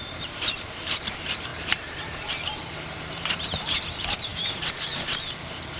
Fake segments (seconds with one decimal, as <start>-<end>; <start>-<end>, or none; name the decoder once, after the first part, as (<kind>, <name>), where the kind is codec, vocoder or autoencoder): 0.0-5.8 (vocoder, BigVGAN v2)